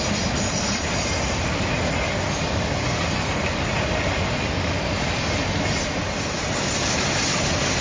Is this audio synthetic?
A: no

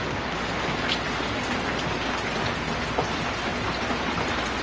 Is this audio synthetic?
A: no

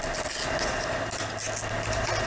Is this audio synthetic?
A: no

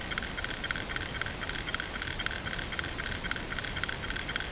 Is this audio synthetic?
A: no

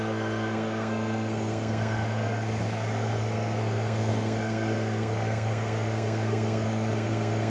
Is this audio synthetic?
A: yes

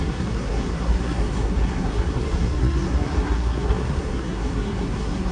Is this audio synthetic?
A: yes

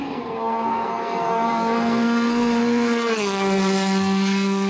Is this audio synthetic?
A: yes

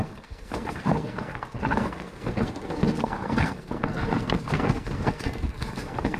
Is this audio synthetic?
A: yes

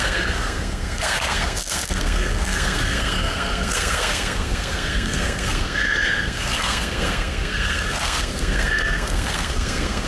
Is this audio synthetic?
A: yes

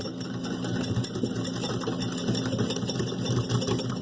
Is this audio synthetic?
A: no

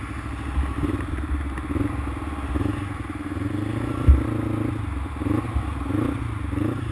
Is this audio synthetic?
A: no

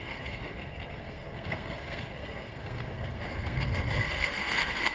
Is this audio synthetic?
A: yes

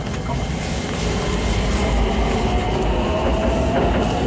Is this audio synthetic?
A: no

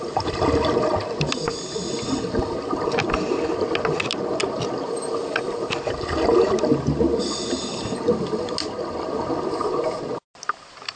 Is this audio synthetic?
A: no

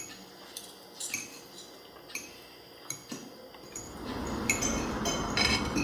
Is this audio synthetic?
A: no